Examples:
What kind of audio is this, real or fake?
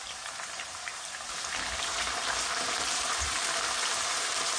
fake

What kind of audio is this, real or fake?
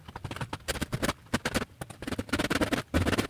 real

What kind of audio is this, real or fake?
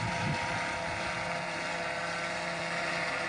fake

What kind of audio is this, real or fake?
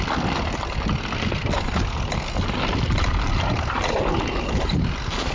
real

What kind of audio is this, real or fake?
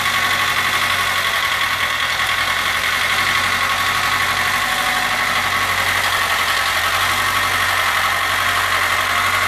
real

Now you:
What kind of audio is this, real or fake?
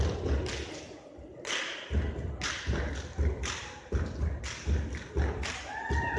real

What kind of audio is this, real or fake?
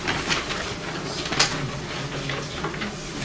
real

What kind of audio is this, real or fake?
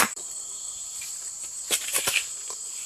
fake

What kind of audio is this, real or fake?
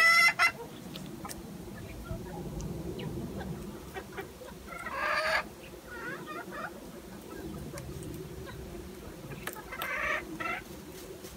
real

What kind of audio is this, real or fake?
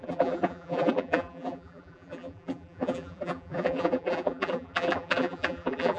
fake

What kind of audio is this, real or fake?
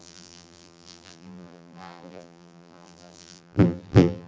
fake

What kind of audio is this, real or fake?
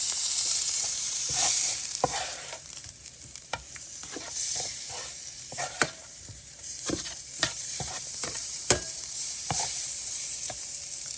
fake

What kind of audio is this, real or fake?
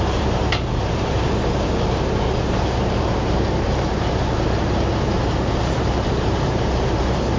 fake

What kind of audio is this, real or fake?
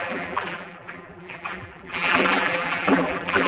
fake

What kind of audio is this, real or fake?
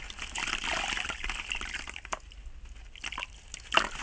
real